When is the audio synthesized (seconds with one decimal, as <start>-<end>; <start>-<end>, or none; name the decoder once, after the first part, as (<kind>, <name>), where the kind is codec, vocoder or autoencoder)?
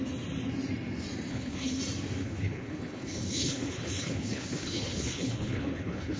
1.3-1.8 (codec, HILCodec); 2.2-6.2